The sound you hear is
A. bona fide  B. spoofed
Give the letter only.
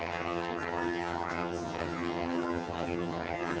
B